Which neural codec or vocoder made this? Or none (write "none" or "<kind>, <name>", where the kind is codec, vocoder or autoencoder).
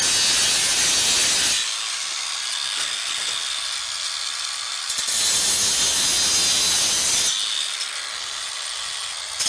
none